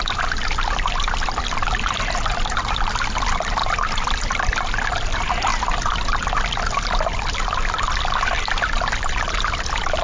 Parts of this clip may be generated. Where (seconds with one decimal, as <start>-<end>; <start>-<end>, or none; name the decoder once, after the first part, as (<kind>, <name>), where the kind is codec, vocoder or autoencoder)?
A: 3.6-4.7 (vocoder, BigVGAN v2)